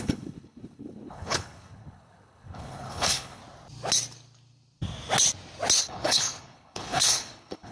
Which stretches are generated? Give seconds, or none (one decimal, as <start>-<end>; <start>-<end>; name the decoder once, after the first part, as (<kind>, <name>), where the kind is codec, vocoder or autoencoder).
0.0-3.4 (codec, HILCodec); 5.8-7.7